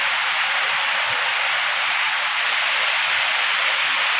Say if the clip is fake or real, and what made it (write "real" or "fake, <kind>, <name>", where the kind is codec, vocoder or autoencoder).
real